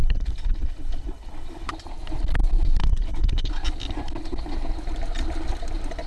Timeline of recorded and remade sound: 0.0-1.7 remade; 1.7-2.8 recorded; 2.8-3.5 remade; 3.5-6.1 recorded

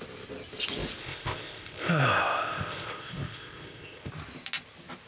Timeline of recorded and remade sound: 0.0-1.0 recorded; 1.0-4.1 remade; 4.1-5.1 recorded

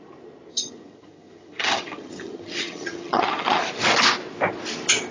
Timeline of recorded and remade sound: 0.0-0.5 recorded; 0.5-3.6 remade; 3.6-5.1 recorded

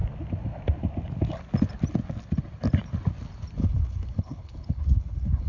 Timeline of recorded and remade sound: 0.0-3.6 recorded; 3.6-5.5 remade

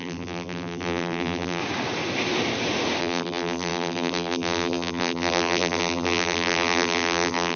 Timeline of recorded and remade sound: 0.0-1.6 remade; 1.6-3.0 recorded; 3.0-7.6 remade